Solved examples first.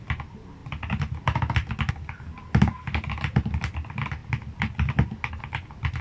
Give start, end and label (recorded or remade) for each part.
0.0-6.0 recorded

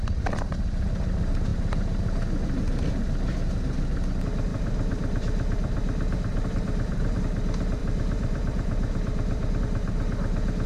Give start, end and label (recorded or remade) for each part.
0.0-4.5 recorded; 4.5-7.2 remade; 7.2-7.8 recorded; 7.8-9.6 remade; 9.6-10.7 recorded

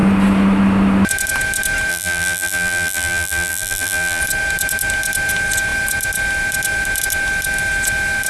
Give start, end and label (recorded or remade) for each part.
0.0-1.9 recorded; 1.9-4.2 remade; 4.2-8.3 recorded

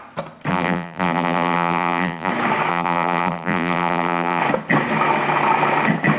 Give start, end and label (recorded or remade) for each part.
0.0-0.5 recorded; 0.5-2.3 remade; 2.3-2.7 recorded; 2.7-4.4 remade; 4.4-6.2 recorded

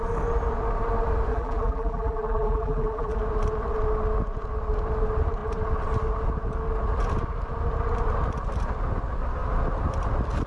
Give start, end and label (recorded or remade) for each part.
0.0-1.3 recorded; 1.3-3.2 remade; 3.2-10.5 recorded

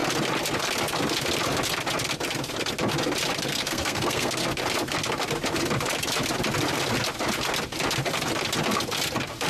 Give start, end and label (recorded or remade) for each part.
0.0-3.5 recorded; 3.5-4.5 remade; 4.5-9.5 recorded

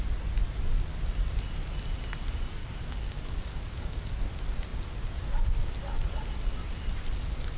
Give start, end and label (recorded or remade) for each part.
0.0-2.6 recorded; 2.6-4.2 remade; 4.2-7.6 recorded

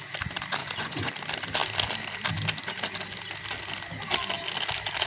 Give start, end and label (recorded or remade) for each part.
0.0-0.6 recorded; 0.6-1.1 remade; 1.1-5.1 recorded